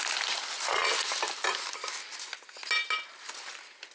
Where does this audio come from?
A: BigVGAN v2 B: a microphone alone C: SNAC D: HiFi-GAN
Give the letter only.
B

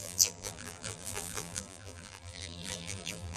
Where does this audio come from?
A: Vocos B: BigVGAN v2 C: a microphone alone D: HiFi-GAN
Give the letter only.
B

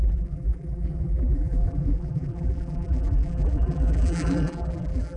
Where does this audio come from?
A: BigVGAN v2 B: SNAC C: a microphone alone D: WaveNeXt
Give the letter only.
A